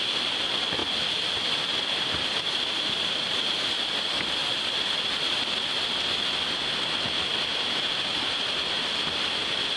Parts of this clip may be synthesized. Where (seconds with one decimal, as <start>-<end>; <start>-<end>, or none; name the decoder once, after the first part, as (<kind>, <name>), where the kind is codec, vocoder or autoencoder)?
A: 0.8-1.6 (vocoder, BigVGAN v2); 4.4-5.1; 7.3-8.6